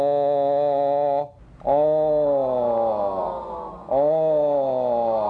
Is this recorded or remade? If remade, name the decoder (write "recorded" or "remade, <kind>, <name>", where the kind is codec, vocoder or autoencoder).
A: recorded